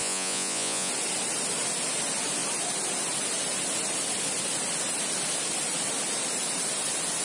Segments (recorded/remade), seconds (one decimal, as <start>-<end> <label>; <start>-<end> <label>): 0.0-0.9 remade; 0.9-7.2 recorded